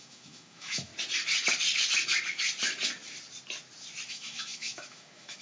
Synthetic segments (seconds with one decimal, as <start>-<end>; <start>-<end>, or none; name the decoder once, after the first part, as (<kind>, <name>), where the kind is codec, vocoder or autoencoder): 0.0-0.9 (autoencoder, DAC-VAE); 4.1-5.4

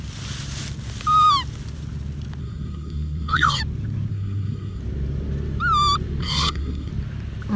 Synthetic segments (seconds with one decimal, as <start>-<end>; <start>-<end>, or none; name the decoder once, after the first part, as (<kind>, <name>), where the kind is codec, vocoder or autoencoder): 2.4-3.6 (codec, SNAC); 4.1-4.8; 6.2-6.9

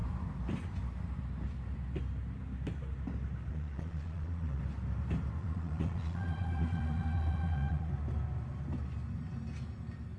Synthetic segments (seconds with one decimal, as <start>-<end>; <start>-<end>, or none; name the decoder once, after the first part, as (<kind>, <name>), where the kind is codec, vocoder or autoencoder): 3.5-4.6 (vocoder, Vocos); 5.4-7.9

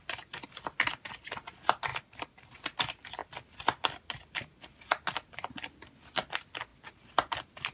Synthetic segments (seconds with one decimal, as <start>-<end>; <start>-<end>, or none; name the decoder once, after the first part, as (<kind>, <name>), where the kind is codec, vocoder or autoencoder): none

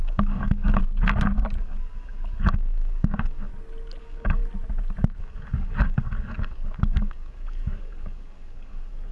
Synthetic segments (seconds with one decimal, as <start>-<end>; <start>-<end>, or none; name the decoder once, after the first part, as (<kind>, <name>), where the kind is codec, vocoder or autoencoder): 0.0-0.8 (codec, DAC); 1.6-3.5; 4.0-4.4; 5.2-9.1